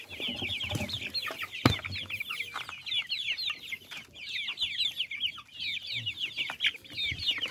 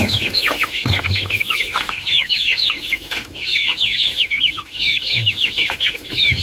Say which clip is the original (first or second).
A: first